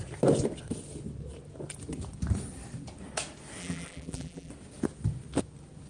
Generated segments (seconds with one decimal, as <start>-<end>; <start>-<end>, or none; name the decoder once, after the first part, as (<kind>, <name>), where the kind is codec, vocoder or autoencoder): 3.6-4.5 (vocoder, BigVGAN v2)